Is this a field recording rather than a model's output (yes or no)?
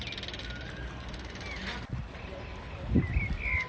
yes